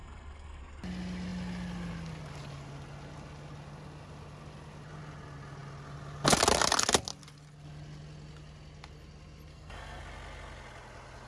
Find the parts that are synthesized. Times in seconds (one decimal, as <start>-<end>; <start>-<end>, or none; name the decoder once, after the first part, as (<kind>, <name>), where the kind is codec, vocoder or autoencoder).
0.0-0.6 (codec, SNAC); 9.5-10.0